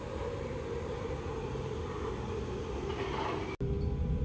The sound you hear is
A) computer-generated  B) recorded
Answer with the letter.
B